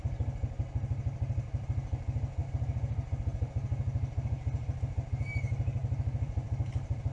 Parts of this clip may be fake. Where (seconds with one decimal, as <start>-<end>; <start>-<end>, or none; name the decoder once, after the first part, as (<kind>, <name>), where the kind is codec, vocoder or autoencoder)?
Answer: 2.4-3.5 (vocoder, BigVGAN v2); 5.8-6.5